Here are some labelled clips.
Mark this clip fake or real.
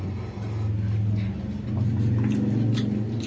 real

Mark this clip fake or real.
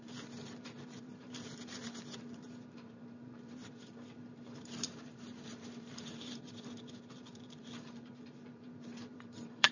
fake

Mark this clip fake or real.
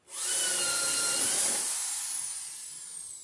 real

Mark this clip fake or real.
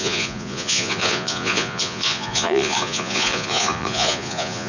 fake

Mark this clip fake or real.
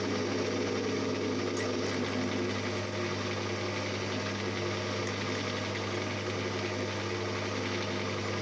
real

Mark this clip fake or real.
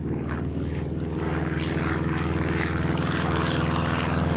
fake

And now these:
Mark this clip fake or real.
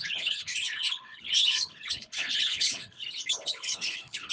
fake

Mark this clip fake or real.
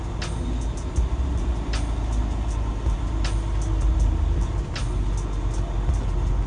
real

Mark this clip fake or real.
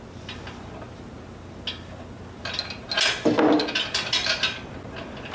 real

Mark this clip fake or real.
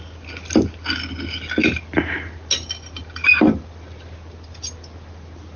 real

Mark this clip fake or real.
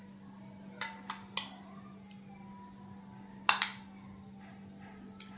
real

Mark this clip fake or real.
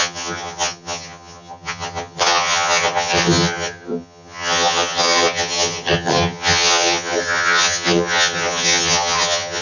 fake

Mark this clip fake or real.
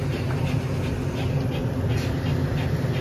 real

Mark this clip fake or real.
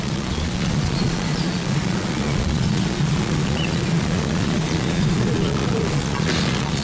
fake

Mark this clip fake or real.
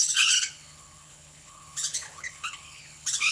fake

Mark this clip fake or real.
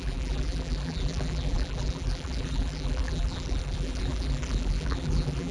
fake